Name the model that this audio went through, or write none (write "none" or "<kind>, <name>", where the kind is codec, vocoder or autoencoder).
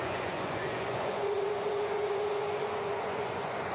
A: vocoder, Vocos